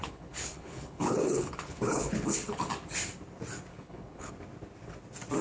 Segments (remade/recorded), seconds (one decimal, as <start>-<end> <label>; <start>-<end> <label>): 0.0-2.6 remade; 2.6-3.7 recorded; 3.7-4.3 remade; 4.3-5.4 recorded